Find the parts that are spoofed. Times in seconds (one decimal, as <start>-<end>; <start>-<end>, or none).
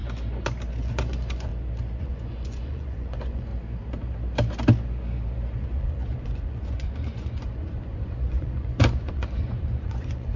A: 0.8-1.5; 2.0-3.5; 5.6-10.4